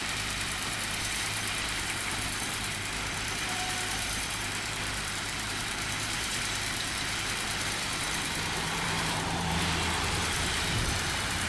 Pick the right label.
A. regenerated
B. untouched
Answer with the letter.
A